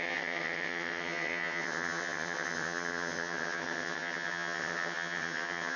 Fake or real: fake